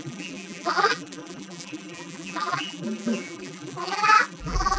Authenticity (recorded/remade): remade